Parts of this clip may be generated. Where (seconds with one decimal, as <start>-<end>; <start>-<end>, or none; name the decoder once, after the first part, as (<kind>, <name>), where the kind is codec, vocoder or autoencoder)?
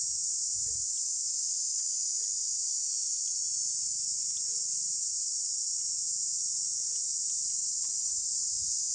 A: 7.6-8.3 (vocoder, Vocos)